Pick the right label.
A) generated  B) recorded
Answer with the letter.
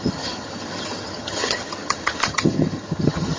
A